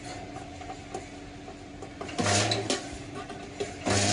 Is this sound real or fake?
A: real